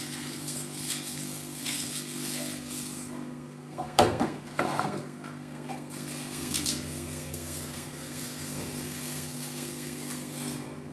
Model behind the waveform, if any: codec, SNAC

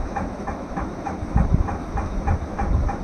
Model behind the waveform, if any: autoencoder, DAC-VAE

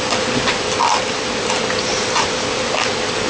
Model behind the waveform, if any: none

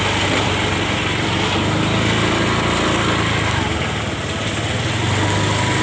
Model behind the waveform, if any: none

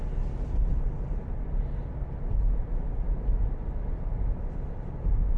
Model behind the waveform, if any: none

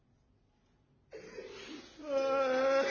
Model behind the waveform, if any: none